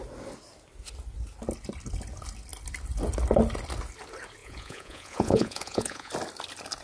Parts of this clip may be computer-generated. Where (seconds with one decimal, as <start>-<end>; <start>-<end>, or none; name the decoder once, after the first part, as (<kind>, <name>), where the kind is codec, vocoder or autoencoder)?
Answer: 4.4-6.1 (vocoder, Vocos)